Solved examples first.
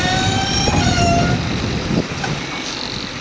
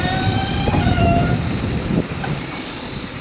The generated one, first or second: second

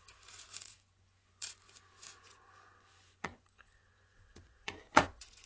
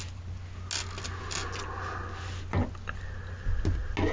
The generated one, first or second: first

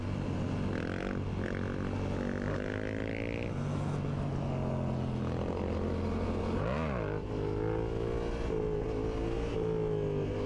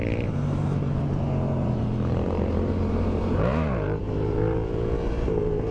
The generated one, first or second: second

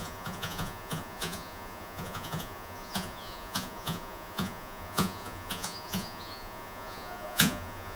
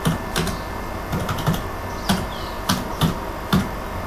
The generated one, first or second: first